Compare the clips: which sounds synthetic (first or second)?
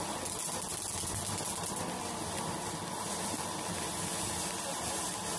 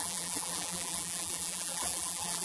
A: second